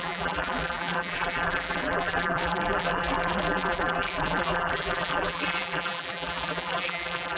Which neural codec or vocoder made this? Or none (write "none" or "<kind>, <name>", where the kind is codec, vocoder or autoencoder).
vocoder, BigVGAN v2